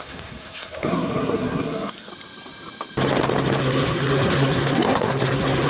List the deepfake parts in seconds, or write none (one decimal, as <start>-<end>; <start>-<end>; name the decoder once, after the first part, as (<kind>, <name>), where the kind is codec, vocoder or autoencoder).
0.0-2.1 (codec, SNAC); 3.6-5.7

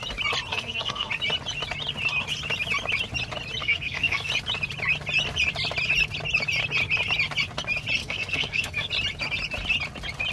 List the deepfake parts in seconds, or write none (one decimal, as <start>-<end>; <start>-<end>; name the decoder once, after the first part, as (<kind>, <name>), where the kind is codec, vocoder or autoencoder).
0.5-1.1 (codec, SNAC); 3.6-4.3; 8.0-8.9